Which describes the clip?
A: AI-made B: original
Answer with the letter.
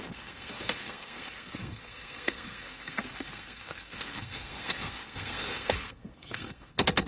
A